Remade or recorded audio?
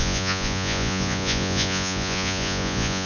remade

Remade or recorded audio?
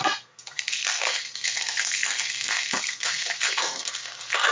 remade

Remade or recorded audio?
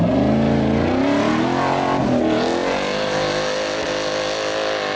recorded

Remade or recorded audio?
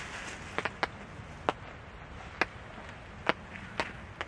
recorded